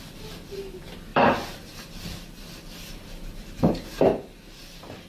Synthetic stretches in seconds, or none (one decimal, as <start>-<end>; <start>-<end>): 1.1-2.9; 4.1-5.1